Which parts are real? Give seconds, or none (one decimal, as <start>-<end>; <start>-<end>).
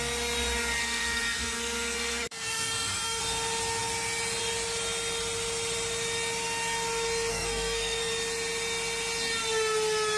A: 0.0-0.8; 3.2-7.3; 8.1-10.2